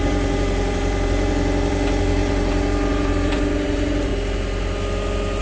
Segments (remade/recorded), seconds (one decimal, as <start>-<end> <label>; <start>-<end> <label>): 0.0-4.1 remade; 4.1-5.4 recorded